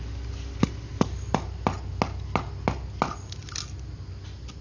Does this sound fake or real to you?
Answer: real